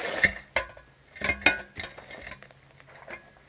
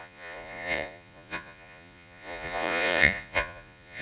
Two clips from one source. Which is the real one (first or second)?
first